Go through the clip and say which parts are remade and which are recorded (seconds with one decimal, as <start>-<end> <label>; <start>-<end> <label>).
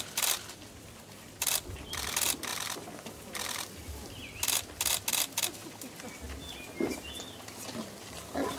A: 0.0-8.6 recorded